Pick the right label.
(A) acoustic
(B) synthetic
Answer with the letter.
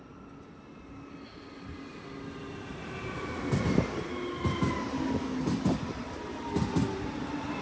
A